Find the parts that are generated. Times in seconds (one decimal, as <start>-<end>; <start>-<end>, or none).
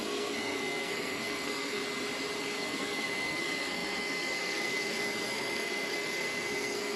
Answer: 0.0-1.8; 2.4-7.0